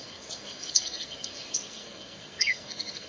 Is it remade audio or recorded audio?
remade